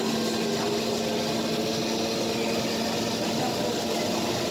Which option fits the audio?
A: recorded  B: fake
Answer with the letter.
A